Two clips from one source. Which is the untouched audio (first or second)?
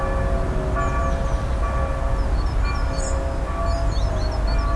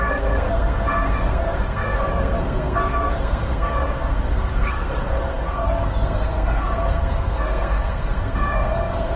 first